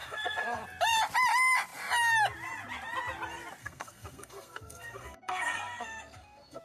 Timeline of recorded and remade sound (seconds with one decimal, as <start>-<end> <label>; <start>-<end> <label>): 0.0-0.6 remade; 0.6-3.6 recorded; 3.6-6.6 remade